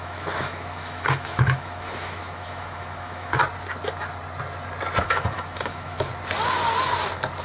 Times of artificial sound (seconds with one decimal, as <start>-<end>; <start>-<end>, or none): 0.0-3.4; 5.0-6.1